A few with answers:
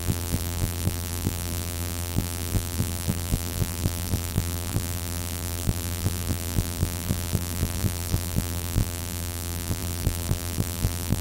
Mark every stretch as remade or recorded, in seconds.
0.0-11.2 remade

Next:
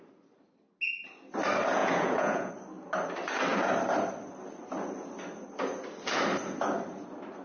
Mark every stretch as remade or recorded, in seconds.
0.0-1.8 recorded; 1.8-2.5 remade; 2.5-7.4 recorded

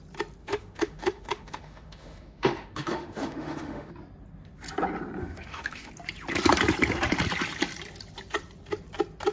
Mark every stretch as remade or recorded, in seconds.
0.0-0.4 recorded; 0.4-3.9 remade; 3.9-5.2 recorded; 5.2-5.9 remade; 5.9-9.3 recorded

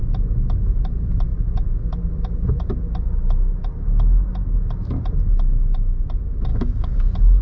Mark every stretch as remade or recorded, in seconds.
0.0-6.5 recorded; 6.5-7.0 remade; 7.0-7.4 recorded

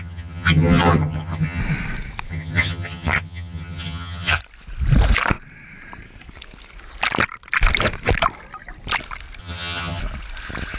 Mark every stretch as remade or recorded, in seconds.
0.0-1.6 remade; 1.6-2.3 recorded; 2.3-4.4 remade; 4.4-9.4 recorded; 9.4-10.0 remade; 10.0-10.8 recorded